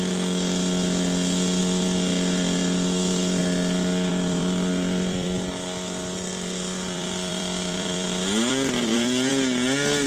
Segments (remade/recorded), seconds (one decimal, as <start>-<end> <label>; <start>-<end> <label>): 0.0-1.6 recorded; 1.6-3.4 remade; 3.4-4.1 recorded; 4.1-9.3 remade; 9.3-10.1 recorded